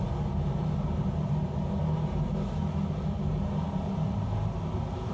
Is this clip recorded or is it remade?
recorded